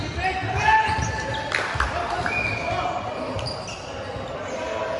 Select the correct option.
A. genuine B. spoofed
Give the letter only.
A